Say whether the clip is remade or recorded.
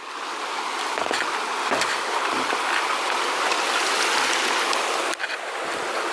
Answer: recorded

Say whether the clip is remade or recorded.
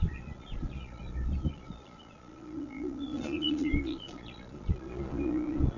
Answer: remade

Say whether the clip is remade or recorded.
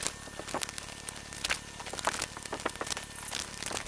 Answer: recorded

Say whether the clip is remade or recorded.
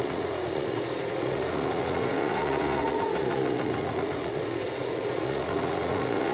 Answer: remade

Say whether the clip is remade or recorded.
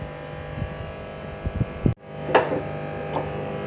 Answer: recorded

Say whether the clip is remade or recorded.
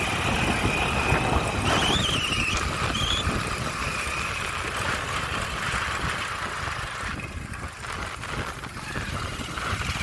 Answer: recorded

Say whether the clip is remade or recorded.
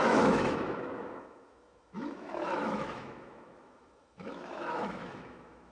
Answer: remade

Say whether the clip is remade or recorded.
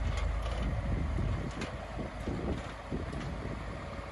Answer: recorded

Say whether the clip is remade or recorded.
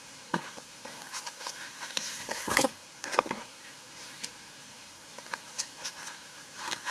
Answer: remade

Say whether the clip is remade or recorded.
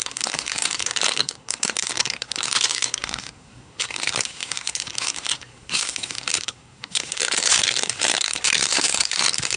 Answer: remade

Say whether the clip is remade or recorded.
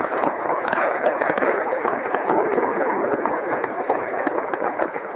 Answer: remade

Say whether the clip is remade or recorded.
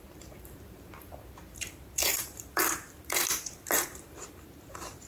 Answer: remade